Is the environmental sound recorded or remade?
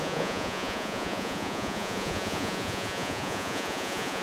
remade